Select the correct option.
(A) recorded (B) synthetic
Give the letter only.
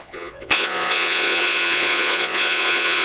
B